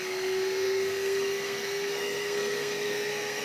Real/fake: fake